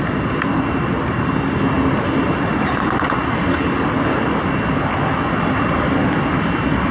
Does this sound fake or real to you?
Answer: real